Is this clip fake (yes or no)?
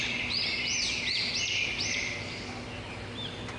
no